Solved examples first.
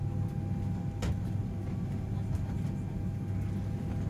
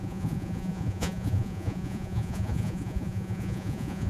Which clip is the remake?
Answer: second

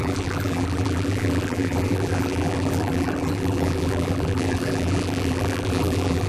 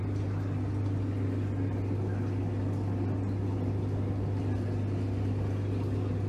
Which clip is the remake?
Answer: first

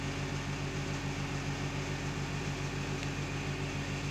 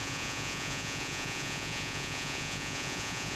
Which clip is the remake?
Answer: second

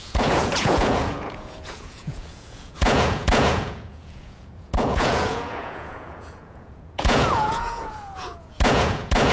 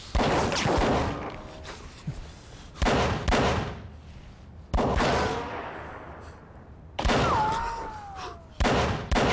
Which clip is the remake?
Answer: first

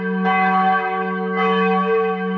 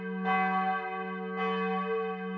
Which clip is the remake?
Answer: first